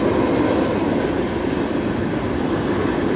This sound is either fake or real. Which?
real